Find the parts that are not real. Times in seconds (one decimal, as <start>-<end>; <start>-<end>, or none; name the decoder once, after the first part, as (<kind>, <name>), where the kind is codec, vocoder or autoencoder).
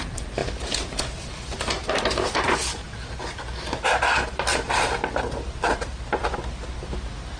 none